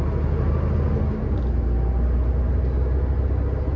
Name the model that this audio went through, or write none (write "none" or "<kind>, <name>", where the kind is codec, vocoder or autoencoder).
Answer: none